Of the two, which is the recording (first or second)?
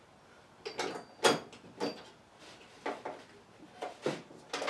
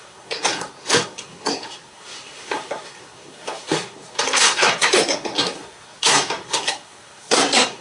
first